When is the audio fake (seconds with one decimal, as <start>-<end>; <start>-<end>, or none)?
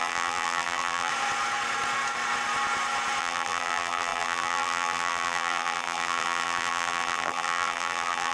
0.0-1.1; 3.2-8.3